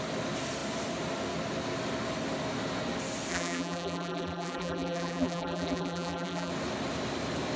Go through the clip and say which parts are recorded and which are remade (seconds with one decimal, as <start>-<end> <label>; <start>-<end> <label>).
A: 0.0-3.3 recorded; 3.3-6.5 remade; 6.5-7.6 recorded